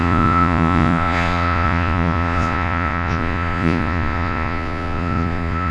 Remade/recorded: remade